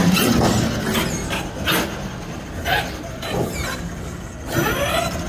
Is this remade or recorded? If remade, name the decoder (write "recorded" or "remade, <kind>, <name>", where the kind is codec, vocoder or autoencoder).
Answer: recorded